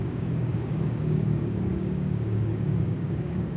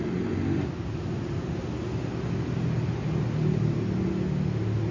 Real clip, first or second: second